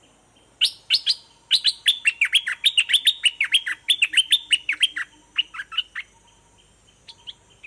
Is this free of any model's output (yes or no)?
yes